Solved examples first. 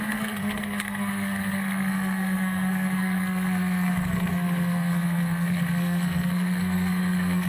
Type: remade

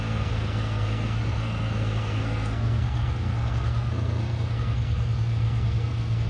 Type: remade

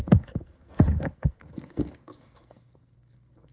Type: remade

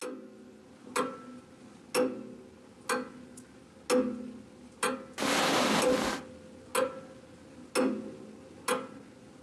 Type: recorded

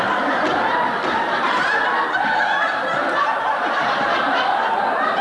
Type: recorded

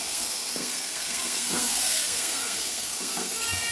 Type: remade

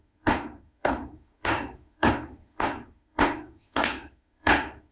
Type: remade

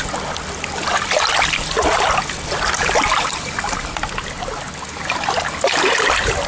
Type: recorded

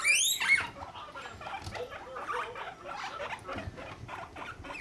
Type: recorded